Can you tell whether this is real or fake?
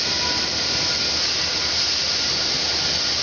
real